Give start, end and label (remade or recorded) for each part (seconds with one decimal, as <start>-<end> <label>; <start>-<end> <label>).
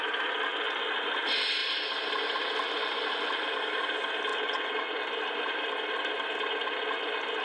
0.0-4.3 recorded; 4.3-5.0 remade; 5.0-7.4 recorded